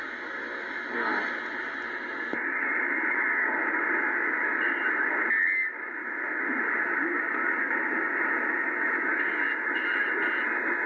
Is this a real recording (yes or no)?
yes